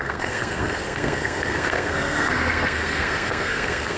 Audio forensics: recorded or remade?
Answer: remade